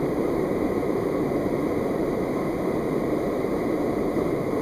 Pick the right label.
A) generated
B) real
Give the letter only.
A